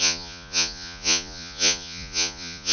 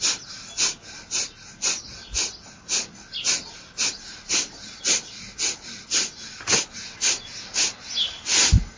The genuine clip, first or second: second